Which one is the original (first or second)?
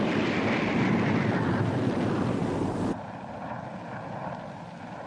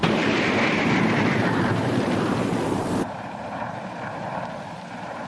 first